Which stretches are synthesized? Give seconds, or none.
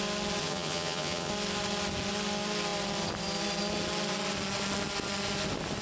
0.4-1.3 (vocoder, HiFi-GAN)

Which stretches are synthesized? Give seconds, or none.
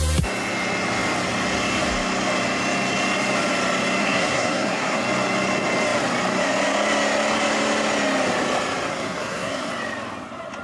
4.0-5.0 (codec, SNAC); 8.9-9.7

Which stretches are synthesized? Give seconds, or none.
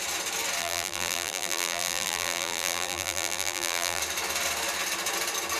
0.6-4.0 (vocoder, BigVGAN v2)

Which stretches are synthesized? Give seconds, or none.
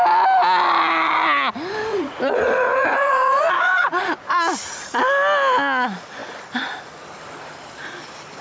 1.9-5.0 (vocoder, Vocos)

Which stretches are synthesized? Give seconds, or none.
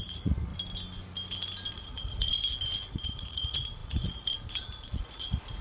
0.0-0.5 (vocoder, Vocos); 1.7-2.3; 2.9-5.6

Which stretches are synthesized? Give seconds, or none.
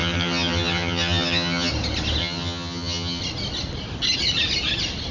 0.0-1.7 (vocoder, HiFi-GAN); 2.2-3.2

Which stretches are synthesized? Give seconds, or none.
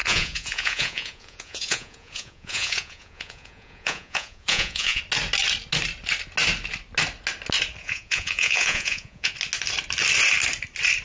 0.0-5.0 (vocoder, Vocos); 7.8-9.3